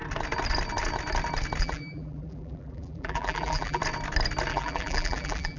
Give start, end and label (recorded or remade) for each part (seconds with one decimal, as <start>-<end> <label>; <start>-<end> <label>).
0.0-1.6 recorded; 1.6-3.8 remade; 3.8-4.5 recorded; 4.5-5.6 remade